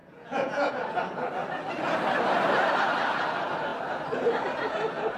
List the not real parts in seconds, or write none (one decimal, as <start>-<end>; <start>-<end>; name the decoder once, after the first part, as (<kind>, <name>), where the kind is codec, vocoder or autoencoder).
0.0-0.7 (vocoder, Vocos)